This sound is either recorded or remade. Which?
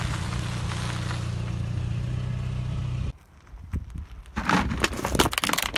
recorded